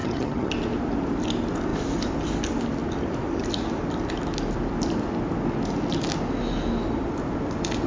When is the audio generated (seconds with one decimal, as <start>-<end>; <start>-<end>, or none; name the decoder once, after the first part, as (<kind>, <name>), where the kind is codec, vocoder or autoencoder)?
0.0-0.5 (vocoder, HiFi-GAN)